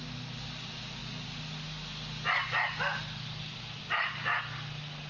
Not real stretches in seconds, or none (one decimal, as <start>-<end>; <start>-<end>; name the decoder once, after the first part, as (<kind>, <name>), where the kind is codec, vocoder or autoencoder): none